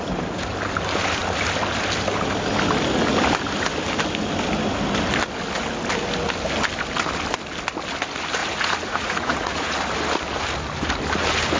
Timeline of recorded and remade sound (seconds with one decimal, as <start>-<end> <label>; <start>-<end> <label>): 0.0-8.4 recorded; 8.4-9.7 remade; 9.7-11.6 recorded